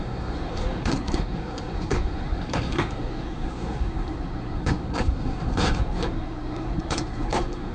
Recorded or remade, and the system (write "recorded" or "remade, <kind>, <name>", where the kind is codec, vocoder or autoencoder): remade, codec, SNAC